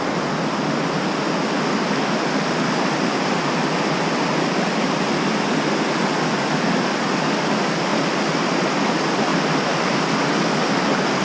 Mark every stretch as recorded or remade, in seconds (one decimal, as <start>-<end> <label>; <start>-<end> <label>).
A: 0.0-11.2 recorded